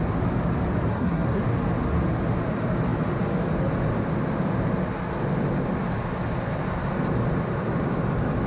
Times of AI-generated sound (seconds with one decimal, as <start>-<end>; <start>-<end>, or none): 0.9-1.4